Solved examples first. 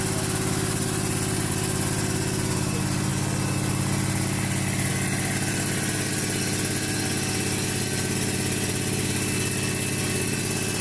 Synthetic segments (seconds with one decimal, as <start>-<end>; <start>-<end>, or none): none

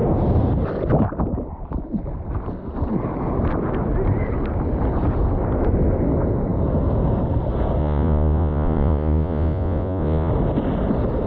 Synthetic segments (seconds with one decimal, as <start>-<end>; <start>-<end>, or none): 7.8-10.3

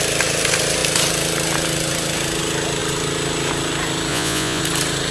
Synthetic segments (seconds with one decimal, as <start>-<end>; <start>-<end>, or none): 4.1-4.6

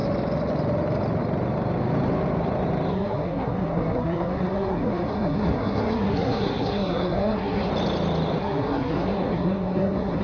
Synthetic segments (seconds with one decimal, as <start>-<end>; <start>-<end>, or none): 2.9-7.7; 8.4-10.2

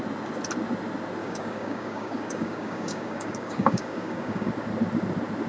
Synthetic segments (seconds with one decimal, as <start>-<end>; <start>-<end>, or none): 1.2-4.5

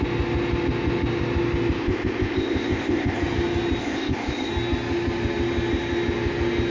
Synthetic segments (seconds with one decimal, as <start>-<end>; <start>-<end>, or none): 1.8-3.2; 3.8-4.5